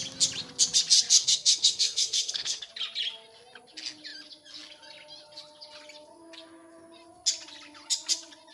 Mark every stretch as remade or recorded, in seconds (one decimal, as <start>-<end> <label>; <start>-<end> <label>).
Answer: 0.0-1.2 recorded; 1.2-2.7 remade; 2.7-8.5 recorded